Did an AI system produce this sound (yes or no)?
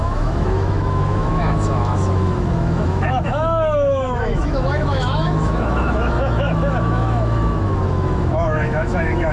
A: yes